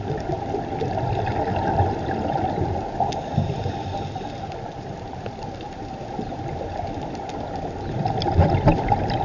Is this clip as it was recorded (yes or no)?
no